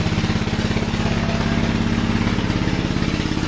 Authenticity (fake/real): real